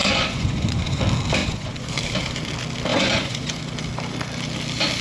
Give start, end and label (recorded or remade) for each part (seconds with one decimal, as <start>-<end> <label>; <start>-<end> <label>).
0.0-1.0 remade; 1.0-1.4 recorded; 1.4-1.9 remade; 1.9-2.9 recorded; 2.9-3.6 remade; 3.6-5.0 recorded

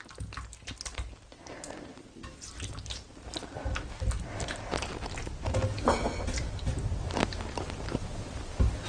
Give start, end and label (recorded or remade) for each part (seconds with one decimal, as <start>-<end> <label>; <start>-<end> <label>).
0.0-8.9 recorded

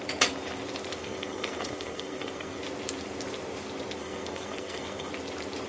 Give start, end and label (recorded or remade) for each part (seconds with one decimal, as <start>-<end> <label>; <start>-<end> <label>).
0.0-1.0 recorded; 1.0-2.6 remade; 2.6-4.0 recorded; 4.0-5.1 remade; 5.1-5.7 recorded

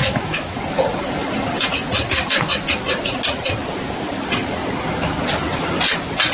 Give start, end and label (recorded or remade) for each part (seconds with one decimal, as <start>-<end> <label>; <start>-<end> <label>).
0.0-0.6 remade; 0.6-6.3 recorded